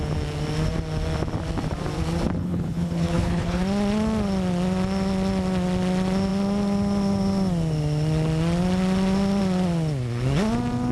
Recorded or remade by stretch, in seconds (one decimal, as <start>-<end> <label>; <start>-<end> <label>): 0.0-2.4 recorded; 2.4-3.6 remade; 3.6-10.9 recorded